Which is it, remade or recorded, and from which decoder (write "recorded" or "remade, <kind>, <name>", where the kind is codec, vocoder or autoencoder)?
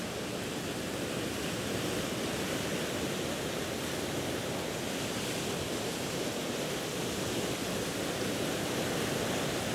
recorded